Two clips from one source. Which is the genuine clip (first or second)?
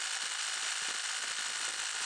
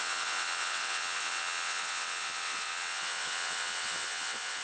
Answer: first